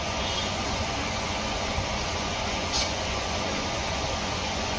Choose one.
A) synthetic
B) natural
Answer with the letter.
A